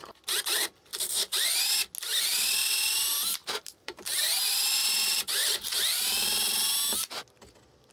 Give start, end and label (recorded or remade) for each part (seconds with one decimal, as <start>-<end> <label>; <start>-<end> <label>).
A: 0.0-0.9 recorded; 0.9-1.5 remade; 1.5-3.4 recorded; 3.4-4.3 remade; 4.3-5.1 recorded; 5.1-6.6 remade; 6.6-7.9 recorded